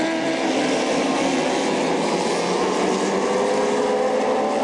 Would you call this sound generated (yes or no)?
no